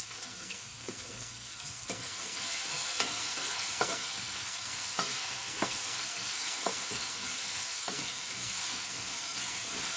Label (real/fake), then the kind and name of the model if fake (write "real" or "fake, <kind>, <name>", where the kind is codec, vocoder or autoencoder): fake, codec, SNAC